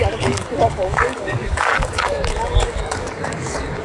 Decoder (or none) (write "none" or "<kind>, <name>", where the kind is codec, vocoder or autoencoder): codec, DAC